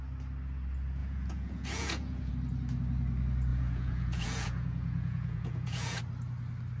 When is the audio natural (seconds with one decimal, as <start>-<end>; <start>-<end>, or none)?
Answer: 0.0-1.0; 2.3-3.5; 6.0-6.8